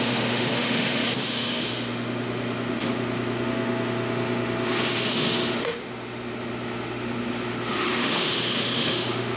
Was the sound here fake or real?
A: fake